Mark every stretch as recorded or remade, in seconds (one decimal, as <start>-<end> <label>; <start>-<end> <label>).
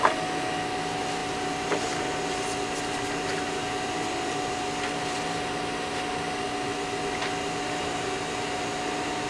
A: 0.0-9.3 recorded